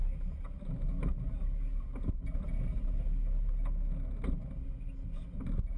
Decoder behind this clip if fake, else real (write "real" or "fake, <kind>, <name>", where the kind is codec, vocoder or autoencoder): real